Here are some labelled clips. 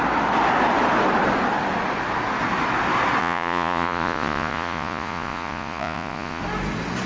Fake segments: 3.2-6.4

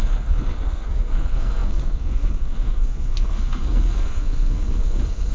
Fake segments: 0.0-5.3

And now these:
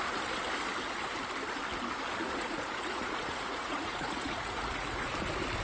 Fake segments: 2.2-5.1